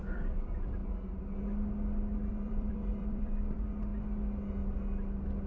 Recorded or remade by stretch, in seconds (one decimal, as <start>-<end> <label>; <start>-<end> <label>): 0.0-0.8 remade; 0.8-2.3 recorded; 2.3-3.9 remade; 3.9-5.5 recorded